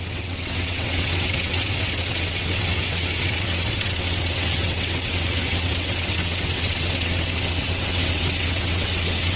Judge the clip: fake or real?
fake